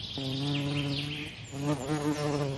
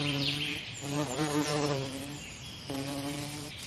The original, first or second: first